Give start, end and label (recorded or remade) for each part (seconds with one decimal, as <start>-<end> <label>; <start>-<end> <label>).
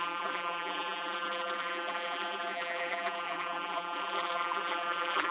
0.0-5.3 remade